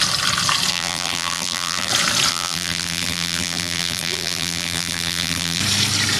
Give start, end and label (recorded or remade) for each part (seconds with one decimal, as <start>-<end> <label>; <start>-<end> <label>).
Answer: 0.0-0.7 recorded; 0.7-1.9 remade; 1.9-2.3 recorded; 2.3-5.6 remade; 5.6-6.2 recorded